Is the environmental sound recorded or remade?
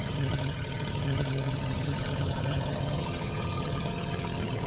remade